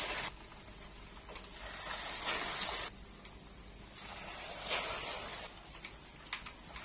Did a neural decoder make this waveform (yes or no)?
no